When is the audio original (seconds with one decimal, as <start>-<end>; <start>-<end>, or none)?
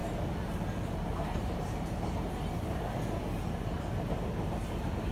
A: 2.2-5.1